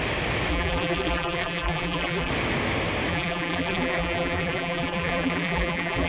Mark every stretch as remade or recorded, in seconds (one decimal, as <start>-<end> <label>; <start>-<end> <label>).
0.0-0.5 recorded; 0.5-2.3 remade; 2.3-3.1 recorded; 3.1-6.1 remade